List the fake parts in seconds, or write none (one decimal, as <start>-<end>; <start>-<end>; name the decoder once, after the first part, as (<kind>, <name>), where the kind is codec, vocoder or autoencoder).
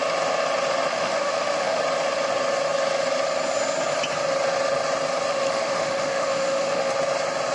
0.9-1.8 (autoencoder, DAC-VAE); 5.3-6.9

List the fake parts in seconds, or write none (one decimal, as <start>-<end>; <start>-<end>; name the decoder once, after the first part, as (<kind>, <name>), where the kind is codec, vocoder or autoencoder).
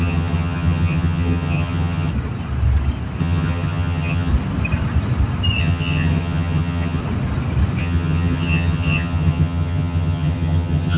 0.0-2.1 (vocoder, HiFi-GAN); 3.2-4.3; 5.6-7.0; 7.8-11.0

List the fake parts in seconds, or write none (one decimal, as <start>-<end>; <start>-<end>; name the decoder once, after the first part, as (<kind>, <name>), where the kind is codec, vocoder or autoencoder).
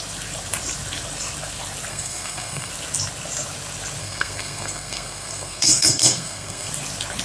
1.9-2.7 (codec, SNAC); 4.0-6.7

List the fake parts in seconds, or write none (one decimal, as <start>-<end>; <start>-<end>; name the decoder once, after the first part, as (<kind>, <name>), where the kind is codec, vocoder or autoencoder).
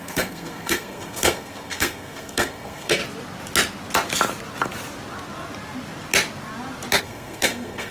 0.0-3.0 (codec, SNAC); 7.0-7.9